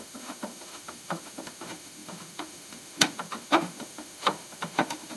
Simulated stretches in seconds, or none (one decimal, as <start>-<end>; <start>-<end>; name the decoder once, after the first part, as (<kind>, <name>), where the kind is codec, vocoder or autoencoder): 0.0-5.2 (autoencoder, DAC-VAE)